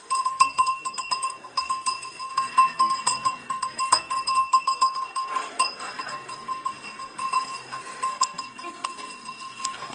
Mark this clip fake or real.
fake